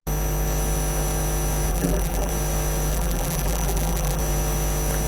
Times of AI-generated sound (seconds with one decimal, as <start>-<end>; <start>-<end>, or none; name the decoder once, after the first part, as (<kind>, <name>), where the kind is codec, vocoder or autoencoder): 1.7-2.3 (vocoder, BigVGAN v2); 2.9-4.2